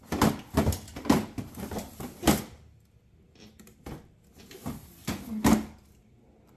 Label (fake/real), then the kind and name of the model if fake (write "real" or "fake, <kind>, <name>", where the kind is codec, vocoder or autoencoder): real